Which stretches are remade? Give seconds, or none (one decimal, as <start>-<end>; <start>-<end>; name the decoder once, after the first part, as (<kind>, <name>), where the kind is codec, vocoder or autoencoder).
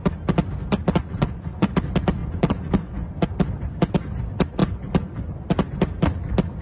1.0-1.7 (vocoder, Vocos); 2.2-3.2